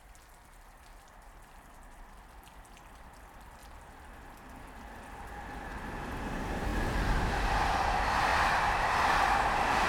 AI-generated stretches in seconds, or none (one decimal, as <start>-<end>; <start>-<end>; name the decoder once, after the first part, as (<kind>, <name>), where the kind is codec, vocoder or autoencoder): 5.7-6.3 (vocoder, BigVGAN v2)

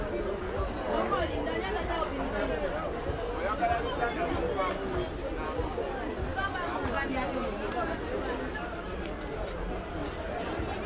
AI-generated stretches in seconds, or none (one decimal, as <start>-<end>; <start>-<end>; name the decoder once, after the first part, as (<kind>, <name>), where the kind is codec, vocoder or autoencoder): none

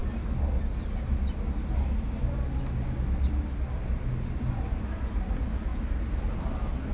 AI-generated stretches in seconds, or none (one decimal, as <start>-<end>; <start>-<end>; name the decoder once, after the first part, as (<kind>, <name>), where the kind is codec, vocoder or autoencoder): none